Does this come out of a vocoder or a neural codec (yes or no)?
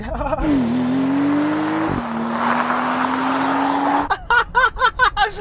no